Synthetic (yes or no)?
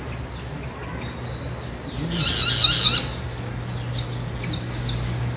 no